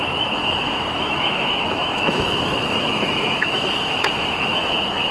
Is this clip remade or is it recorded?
remade